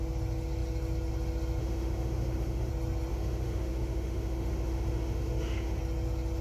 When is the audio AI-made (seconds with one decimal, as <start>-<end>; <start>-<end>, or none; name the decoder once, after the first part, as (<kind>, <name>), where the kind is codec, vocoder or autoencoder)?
1.6-2.7 (autoencoder, DAC-VAE); 3.1-5.8